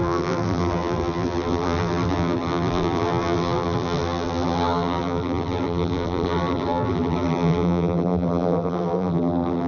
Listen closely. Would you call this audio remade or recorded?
remade